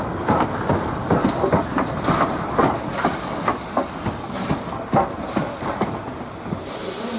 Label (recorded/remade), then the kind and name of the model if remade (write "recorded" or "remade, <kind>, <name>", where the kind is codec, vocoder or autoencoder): recorded